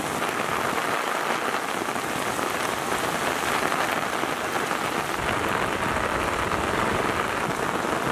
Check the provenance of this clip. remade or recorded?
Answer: recorded